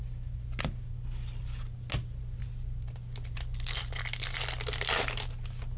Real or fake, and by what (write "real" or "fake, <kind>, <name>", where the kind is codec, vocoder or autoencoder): real